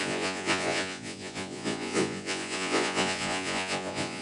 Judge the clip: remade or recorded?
remade